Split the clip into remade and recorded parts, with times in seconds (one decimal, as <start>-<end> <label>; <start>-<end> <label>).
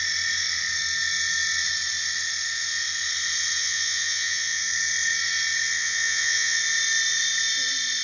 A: 0.0-3.6 recorded; 3.6-4.6 remade; 4.6-5.8 recorded; 5.8-6.6 remade; 6.6-8.0 recorded